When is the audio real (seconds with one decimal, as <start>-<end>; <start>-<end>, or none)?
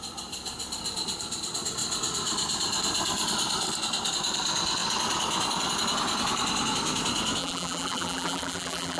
0.0-7.4